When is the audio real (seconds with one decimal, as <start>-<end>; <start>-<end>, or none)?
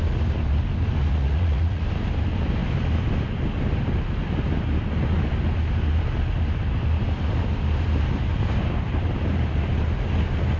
0.0-1.1; 1.8-10.6